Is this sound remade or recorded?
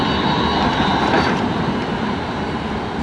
remade